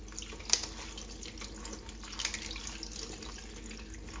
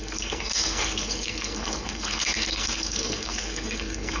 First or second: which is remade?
second